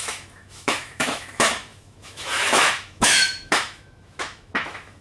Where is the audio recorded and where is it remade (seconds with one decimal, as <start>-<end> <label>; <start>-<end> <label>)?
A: 0.0-5.0 remade